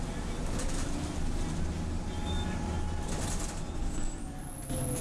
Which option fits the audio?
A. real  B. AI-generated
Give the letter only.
A